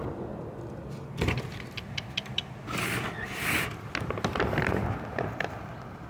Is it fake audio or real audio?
real